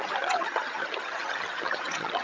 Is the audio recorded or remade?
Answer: remade